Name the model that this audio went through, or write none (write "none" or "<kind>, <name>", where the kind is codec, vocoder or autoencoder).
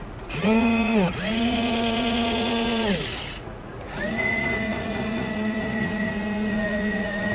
vocoder, Vocos